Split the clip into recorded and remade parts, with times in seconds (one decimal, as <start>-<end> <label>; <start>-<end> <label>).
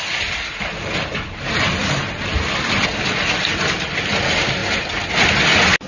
0.0-5.9 recorded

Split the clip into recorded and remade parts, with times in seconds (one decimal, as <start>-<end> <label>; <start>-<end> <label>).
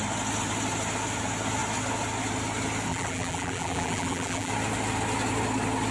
0.0-2.9 recorded; 2.9-4.5 remade; 4.5-5.9 recorded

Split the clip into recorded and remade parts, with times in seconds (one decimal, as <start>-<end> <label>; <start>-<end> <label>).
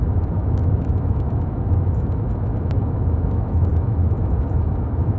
0.0-5.2 remade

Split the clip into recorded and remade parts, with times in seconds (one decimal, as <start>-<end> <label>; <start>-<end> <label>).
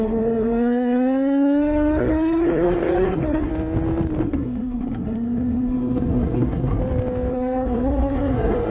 0.0-3.5 remade; 3.5-4.2 recorded; 4.2-6.8 remade; 6.8-7.3 recorded; 7.3-8.7 remade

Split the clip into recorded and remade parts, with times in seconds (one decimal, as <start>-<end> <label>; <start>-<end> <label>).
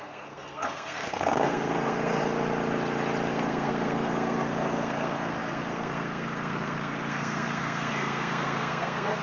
0.0-2.2 remade; 2.2-3.3 recorded; 3.3-9.2 remade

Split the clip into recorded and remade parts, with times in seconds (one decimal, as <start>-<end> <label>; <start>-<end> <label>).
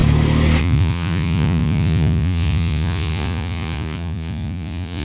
0.0-0.6 recorded; 0.6-5.0 remade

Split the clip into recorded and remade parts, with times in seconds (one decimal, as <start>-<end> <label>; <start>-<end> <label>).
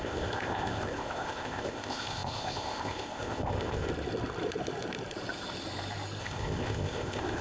0.0-3.9 remade; 3.9-6.2 recorded; 6.2-7.4 remade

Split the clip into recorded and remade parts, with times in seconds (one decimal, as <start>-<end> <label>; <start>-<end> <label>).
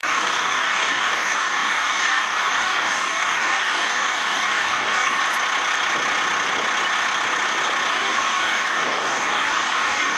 0.0-5.2 remade; 5.2-7.9 recorded; 7.9-10.2 remade